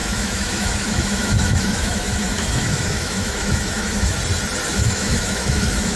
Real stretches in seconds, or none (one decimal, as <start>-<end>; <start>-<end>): 4.2-4.7